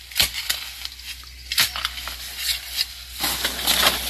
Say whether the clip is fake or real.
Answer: real